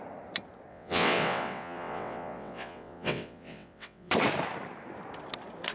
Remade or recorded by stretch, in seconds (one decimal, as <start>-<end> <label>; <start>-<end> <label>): 0.0-0.7 recorded; 0.7-4.1 remade; 4.1-5.7 recorded